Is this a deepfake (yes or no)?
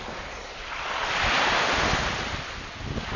no